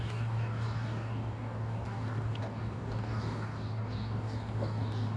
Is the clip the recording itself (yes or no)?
no